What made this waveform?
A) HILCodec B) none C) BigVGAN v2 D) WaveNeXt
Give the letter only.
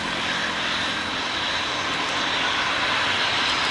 B